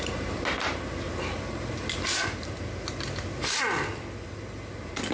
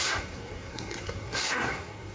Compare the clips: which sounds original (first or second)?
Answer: first